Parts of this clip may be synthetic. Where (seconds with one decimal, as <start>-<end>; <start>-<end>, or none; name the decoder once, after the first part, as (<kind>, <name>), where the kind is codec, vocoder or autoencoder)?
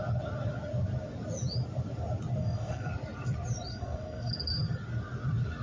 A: 2.4-2.9 (codec, SNAC); 3.7-4.3